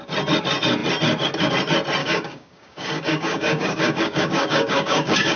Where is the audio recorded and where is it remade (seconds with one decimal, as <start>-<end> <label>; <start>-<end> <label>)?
0.0-2.0 recorded; 2.0-5.4 remade

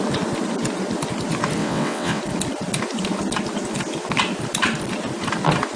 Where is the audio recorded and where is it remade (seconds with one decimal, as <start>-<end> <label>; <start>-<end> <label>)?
0.0-1.6 recorded; 1.6-2.2 remade; 2.2-5.8 recorded

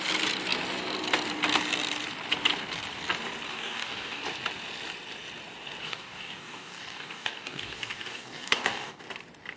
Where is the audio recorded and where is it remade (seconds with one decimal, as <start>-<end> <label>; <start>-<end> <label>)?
0.0-3.5 recorded; 3.5-4.2 remade; 4.2-5.8 recorded; 5.8-9.0 remade; 9.0-9.6 recorded

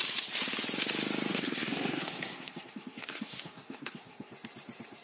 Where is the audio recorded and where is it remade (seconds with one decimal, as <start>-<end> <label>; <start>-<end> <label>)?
0.0-1.3 recorded; 1.3-4.3 remade; 4.3-5.0 recorded

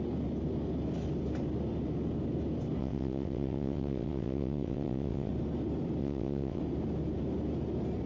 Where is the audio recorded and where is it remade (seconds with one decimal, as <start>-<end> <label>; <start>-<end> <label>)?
0.0-2.8 recorded; 2.8-5.3 remade; 5.3-6.0 recorded; 6.0-6.6 remade; 6.6-8.1 recorded

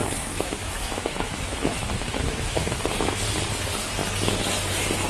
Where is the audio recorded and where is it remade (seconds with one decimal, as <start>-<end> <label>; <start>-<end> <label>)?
0.0-3.1 remade; 3.1-5.1 recorded

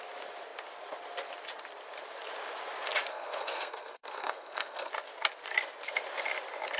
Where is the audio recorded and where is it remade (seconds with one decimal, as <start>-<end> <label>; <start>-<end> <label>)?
0.0-3.1 recorded; 3.1-4.9 remade; 4.9-6.8 recorded